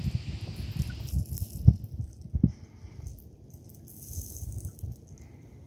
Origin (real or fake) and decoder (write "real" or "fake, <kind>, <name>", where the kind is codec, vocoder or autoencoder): real